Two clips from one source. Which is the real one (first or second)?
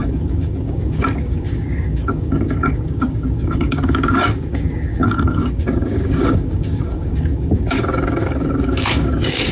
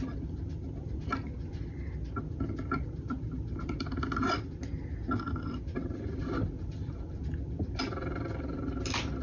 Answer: second